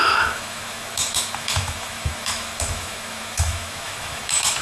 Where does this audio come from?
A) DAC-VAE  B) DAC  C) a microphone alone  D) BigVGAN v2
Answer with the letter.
A